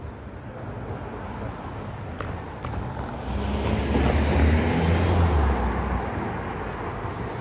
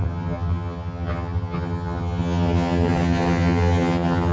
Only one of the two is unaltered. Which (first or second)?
first